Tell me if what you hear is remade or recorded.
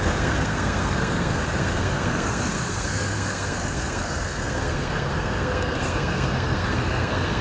remade